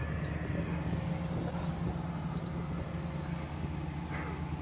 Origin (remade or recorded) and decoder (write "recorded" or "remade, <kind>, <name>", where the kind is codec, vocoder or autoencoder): recorded